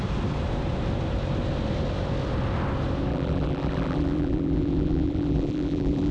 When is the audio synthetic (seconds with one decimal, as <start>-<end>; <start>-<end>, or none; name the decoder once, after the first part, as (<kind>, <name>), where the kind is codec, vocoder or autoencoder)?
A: 3.1-6.1 (vocoder, BigVGAN v2)